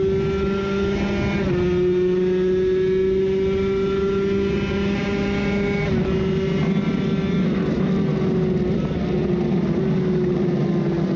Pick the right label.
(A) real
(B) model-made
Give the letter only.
A